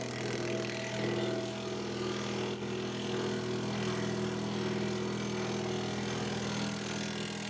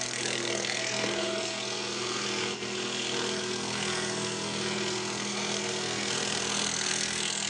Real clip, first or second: first